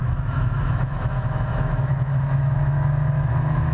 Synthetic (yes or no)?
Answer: yes